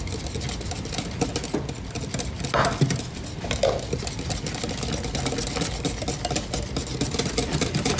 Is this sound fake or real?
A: real